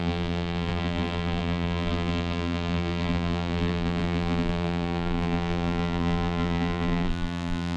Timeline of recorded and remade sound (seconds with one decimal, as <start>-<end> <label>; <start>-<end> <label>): 0.0-7.8 remade